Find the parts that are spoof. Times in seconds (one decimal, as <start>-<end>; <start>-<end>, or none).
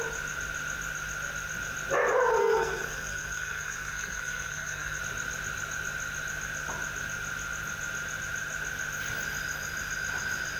2.4-5.0